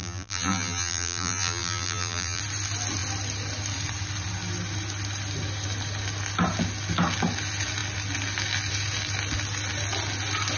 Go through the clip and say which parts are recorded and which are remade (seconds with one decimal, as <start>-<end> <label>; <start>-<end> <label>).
0.0-2.4 remade; 2.4-10.6 recorded